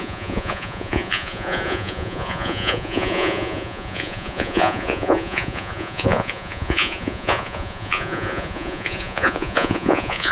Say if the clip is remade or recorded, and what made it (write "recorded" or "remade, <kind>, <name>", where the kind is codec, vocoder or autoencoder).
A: remade, vocoder, Vocos